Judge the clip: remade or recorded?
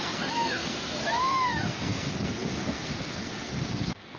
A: remade